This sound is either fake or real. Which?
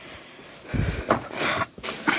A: fake